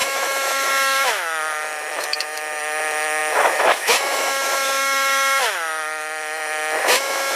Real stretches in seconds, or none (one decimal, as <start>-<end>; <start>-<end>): none